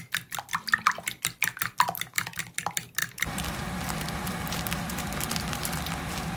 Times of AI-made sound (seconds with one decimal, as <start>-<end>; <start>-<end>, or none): 3.0-4.5